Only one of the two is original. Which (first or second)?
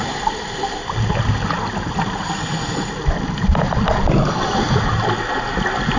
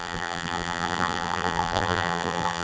first